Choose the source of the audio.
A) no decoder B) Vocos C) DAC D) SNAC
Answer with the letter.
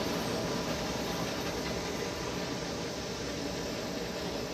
A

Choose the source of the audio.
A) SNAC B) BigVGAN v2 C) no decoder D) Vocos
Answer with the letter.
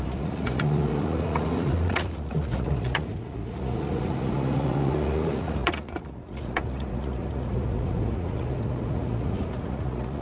D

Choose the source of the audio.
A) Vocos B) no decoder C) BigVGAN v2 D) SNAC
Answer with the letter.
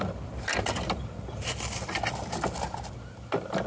B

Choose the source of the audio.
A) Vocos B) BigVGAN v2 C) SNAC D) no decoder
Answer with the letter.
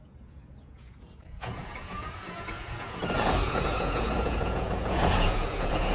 A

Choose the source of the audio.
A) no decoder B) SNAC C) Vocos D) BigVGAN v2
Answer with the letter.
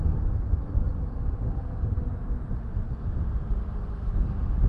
A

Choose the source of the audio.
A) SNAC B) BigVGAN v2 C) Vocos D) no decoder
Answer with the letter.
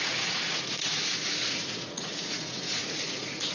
C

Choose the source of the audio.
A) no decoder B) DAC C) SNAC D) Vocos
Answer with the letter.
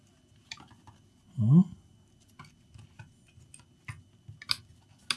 A